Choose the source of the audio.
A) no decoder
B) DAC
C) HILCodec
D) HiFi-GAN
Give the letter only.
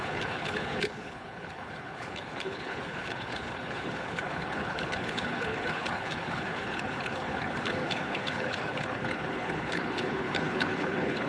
C